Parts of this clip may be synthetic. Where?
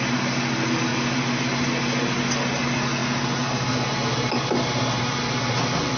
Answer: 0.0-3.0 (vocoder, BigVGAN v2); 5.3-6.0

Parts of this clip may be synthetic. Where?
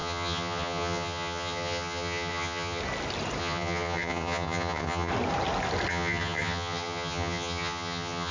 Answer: 0.0-2.8 (vocoder, HiFi-GAN); 3.4-5.1; 5.9-8.3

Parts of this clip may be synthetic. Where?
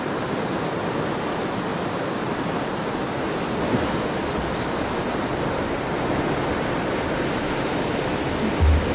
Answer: none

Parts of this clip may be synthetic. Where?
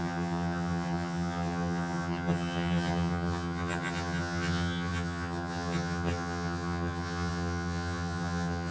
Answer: 0.0-8.7 (vocoder, HiFi-GAN)